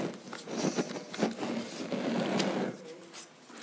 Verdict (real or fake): real